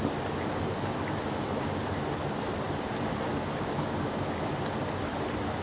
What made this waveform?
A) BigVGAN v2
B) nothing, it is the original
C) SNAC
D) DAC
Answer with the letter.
B